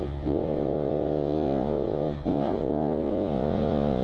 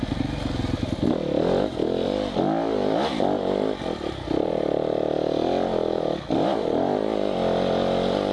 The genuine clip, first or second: second